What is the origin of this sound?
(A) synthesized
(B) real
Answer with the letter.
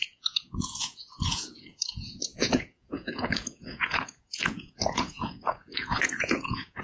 A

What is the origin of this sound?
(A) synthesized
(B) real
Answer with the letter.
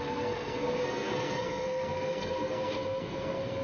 A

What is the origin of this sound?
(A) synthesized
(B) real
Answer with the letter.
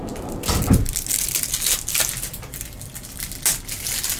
B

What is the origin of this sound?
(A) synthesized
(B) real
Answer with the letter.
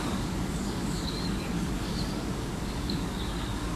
A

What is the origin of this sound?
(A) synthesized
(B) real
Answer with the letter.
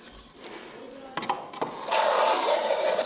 B